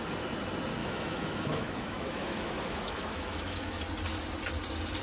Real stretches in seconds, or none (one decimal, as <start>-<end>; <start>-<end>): 0.0-0.8; 3.8-5.0